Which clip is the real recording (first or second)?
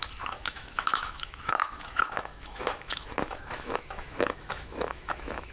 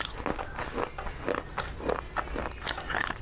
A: second